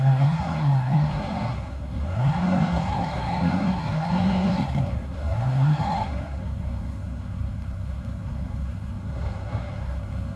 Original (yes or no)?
no